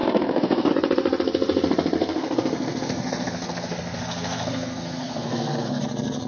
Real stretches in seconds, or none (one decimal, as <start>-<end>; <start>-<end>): 0.7-2.0; 5.8-6.3